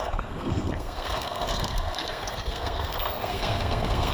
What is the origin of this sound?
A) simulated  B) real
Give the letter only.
A